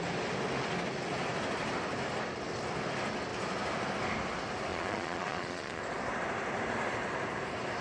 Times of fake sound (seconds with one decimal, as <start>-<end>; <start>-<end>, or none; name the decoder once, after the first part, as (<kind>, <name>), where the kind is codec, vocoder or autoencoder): 4.7-5.8 (vocoder, Vocos)